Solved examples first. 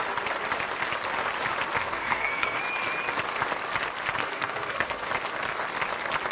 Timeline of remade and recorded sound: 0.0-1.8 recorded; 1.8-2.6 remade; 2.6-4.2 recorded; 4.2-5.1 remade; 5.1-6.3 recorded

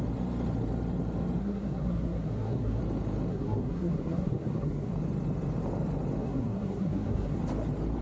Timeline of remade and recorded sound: 0.0-1.4 recorded; 1.4-2.8 remade; 2.8-3.3 recorded; 3.3-4.9 remade; 4.9-6.2 recorded; 6.2-7.4 remade; 7.4-8.0 recorded

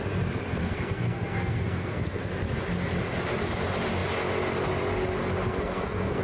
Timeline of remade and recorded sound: 0.0-0.6 recorded; 0.6-2.3 remade; 2.3-5.4 recorded; 5.4-6.2 remade

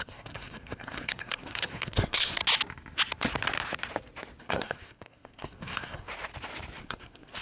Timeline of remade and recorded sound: 0.0-2.4 remade; 2.4-4.4 recorded; 4.4-6.1 remade; 6.1-6.8 recorded; 6.8-7.4 remade

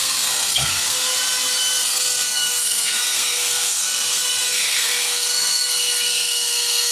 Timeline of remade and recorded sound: 0.0-1.1 remade; 1.1-1.8 recorded; 1.8-6.9 remade

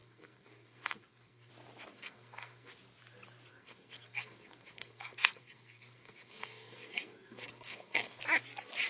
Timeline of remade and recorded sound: 0.0-1.5 remade; 1.5-1.9 recorded; 1.9-2.7 remade; 2.7-3.5 recorded; 3.5-8.2 remade; 8.2-8.9 recorded